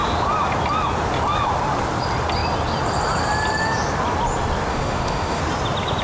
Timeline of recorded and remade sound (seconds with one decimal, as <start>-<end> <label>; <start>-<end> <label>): 0.0-4.7 recorded; 4.7-5.4 remade; 5.4-6.0 recorded